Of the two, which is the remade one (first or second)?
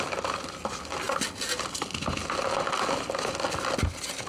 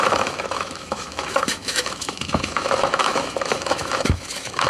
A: second